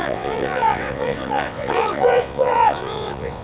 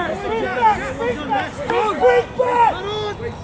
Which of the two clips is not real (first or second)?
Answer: first